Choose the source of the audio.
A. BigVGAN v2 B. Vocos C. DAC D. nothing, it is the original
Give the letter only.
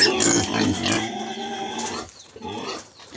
D